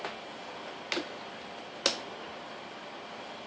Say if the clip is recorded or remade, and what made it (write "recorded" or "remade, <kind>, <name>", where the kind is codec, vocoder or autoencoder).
recorded